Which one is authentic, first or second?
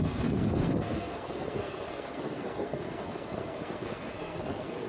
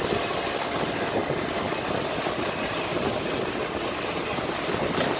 second